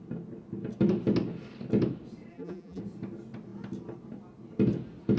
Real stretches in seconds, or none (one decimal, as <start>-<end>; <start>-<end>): 0.0-2.3; 2.8-5.2